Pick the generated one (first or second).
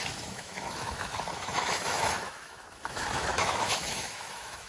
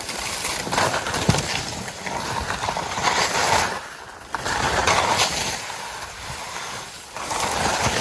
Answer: first